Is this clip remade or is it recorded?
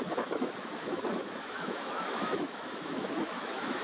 remade